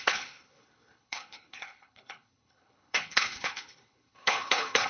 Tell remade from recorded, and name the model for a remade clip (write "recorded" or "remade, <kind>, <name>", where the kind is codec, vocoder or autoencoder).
remade, codec, HILCodec